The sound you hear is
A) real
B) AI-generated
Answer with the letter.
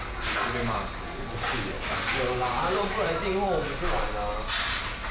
A